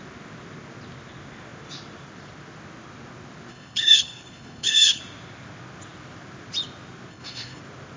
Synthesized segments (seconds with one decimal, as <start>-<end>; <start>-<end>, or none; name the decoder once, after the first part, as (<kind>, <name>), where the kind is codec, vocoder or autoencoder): 3.5-5.0 (codec, HILCodec); 7.1-7.6